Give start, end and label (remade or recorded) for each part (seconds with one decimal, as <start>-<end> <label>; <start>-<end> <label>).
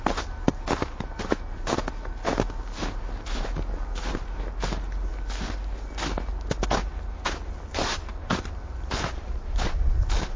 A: 0.0-10.4 recorded